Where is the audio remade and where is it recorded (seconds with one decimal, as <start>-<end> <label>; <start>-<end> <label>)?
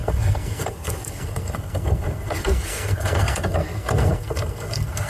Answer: 0.0-5.1 remade